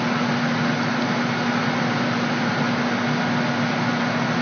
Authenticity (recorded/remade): recorded